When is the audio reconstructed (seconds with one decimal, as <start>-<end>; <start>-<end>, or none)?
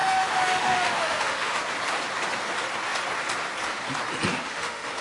0.0-1.6; 4.4-5.0